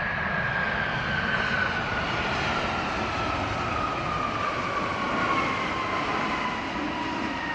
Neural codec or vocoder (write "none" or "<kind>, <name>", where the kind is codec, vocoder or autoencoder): none